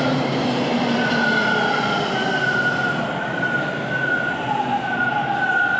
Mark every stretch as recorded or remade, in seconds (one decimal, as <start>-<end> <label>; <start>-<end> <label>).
0.0-5.8 recorded